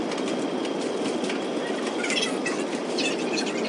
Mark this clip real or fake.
real